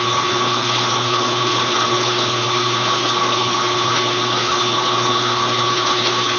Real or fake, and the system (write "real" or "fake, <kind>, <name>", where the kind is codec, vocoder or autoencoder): fake, codec, HILCodec